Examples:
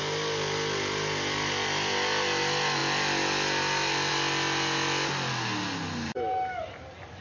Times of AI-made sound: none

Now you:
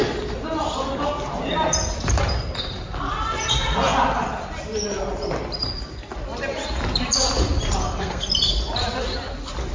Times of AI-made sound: 7.8-8.3